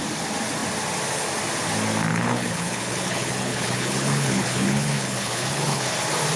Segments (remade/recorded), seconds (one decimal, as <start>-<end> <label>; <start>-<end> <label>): 0.0-2.1 recorded; 2.1-5.9 remade; 5.9-6.4 recorded